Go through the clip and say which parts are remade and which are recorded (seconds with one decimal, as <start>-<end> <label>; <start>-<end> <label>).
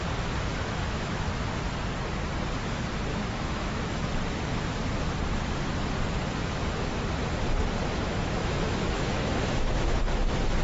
0.0-0.5 recorded; 0.5-1.7 remade; 1.7-3.1 recorded; 3.1-4.0 remade; 4.0-8.4 recorded; 8.4-10.0 remade; 10.0-10.6 recorded